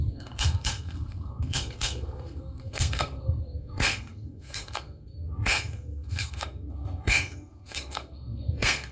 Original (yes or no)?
no